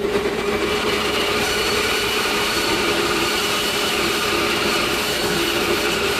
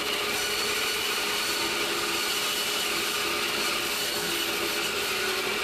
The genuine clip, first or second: second